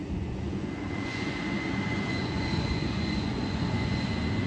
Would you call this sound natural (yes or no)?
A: no